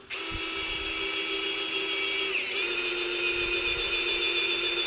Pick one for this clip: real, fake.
real